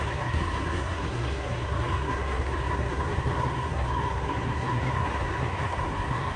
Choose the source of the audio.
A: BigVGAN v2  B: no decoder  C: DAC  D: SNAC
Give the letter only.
D